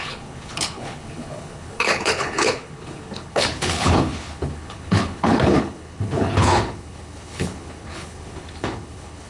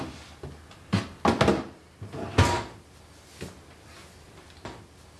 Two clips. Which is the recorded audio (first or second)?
second